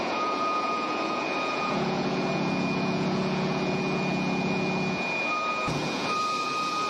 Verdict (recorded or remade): remade